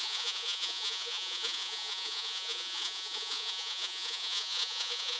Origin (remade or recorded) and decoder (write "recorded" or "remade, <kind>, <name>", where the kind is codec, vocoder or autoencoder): remade, vocoder, Vocos